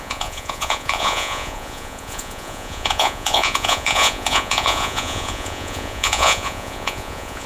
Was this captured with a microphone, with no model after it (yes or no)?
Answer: no